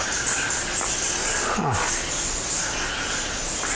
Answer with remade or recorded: recorded